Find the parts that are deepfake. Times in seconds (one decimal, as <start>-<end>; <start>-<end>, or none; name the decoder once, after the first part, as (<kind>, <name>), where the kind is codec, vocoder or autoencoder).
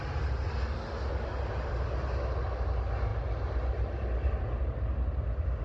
none